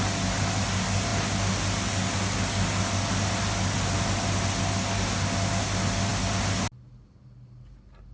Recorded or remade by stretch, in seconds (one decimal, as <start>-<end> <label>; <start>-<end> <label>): 0.0-8.1 recorded

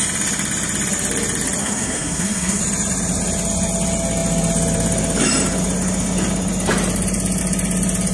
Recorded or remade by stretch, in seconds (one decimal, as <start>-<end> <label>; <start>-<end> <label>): 0.0-1.6 recorded; 1.6-2.6 remade; 2.6-8.1 recorded

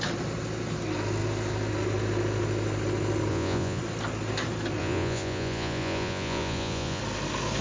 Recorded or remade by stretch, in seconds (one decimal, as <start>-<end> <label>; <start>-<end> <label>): 0.0-3.3 recorded; 3.3-3.8 remade; 3.8-4.8 recorded; 4.8-7.0 remade; 7.0-7.6 recorded

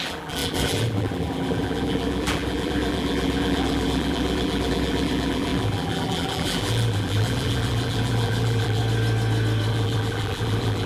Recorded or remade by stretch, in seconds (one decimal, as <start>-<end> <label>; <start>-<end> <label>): 0.0-8.8 remade; 8.8-9.7 recorded; 9.7-10.9 remade

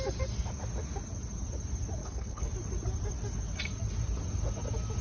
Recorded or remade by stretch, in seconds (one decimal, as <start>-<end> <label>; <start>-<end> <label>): 0.0-2.0 recorded; 2.0-2.5 remade; 2.5-5.0 recorded

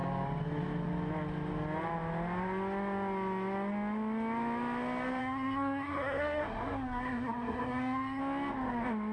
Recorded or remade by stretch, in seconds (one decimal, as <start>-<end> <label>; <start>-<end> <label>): 0.0-5.2 recorded; 5.2-8.2 remade; 8.2-9.1 recorded

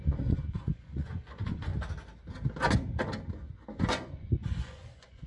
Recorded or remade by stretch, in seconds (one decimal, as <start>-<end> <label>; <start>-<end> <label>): 0.0-1.7 remade; 1.7-3.8 recorded; 3.8-5.3 remade

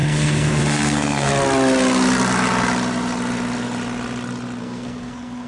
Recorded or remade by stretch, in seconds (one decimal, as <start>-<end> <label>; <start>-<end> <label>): 0.0-1.3 remade; 1.3-4.6 recorded; 4.6-5.5 remade